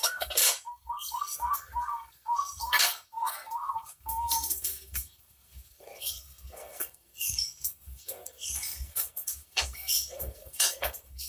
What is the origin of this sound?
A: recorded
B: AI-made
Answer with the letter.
B